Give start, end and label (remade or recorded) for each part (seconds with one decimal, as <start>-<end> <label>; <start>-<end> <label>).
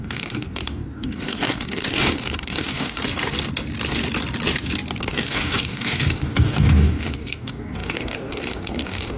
0.0-3.0 remade; 3.0-5.0 recorded; 5.0-9.2 remade